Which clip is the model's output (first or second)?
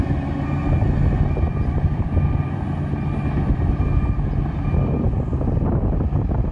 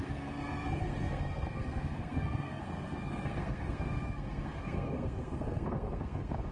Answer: second